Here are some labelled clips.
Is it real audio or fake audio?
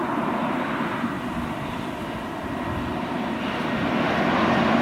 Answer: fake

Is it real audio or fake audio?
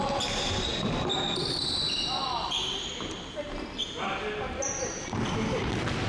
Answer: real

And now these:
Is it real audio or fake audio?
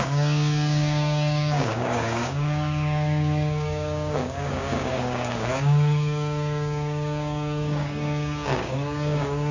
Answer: fake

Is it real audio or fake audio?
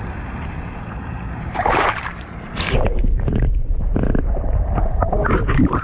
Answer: fake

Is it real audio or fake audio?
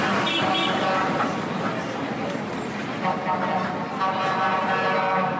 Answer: real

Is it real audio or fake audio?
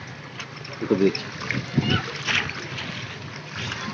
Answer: real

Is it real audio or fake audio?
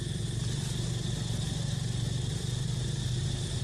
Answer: real